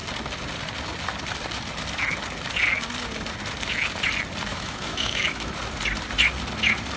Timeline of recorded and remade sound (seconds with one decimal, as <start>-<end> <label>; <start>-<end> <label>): 0.0-4.5 recorded; 4.5-5.5 remade; 5.5-7.0 recorded